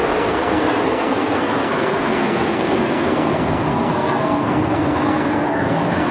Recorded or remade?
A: remade